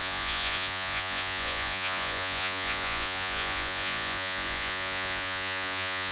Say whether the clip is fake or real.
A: fake